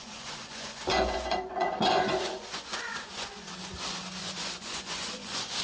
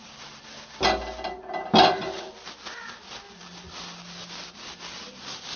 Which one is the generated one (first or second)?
first